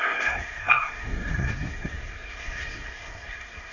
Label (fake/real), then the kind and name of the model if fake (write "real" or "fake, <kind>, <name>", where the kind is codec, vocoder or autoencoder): fake, codec, SNAC